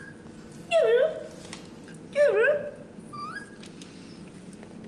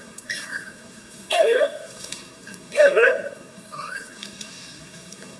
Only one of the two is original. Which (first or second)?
first